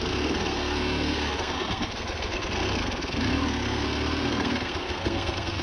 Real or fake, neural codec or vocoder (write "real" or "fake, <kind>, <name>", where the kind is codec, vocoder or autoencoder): fake, codec, SNAC